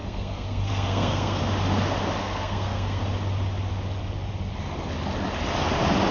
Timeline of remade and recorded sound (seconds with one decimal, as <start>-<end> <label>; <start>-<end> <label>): 0.0-1.4 remade; 1.4-2.2 recorded; 2.2-3.0 remade; 3.0-6.1 recorded